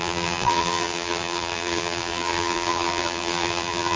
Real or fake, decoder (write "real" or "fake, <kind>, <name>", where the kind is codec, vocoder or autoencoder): fake, vocoder, BigVGAN v2